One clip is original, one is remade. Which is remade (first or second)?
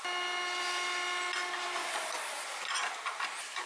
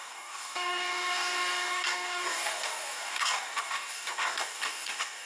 second